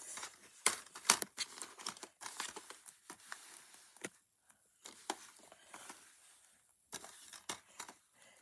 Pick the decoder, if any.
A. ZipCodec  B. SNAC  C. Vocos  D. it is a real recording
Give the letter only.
D